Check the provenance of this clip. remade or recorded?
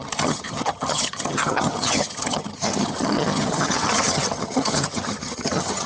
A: remade